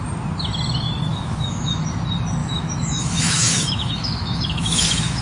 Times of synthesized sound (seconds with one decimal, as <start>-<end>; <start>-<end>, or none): 1.1-1.8; 2.4-5.2